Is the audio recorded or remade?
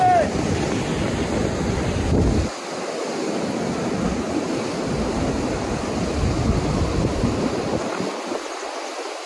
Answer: recorded